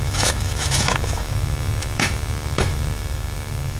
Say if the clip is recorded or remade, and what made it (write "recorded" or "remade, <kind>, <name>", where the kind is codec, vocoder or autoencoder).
remade, autoencoder, DAC-VAE